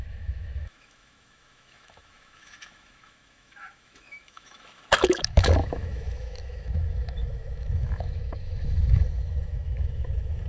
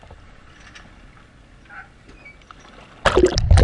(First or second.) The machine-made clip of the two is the first